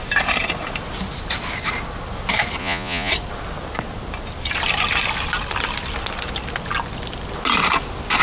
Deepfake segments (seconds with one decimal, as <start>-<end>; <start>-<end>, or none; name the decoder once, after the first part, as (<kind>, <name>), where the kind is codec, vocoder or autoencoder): 2.6-3.1 (vocoder, Vocos)